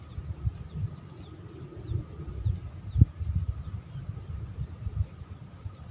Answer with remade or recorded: recorded